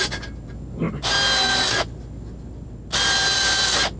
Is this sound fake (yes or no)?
no